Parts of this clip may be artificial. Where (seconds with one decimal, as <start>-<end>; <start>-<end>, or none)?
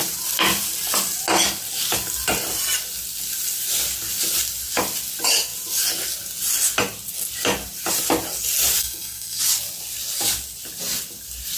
8.8-9.4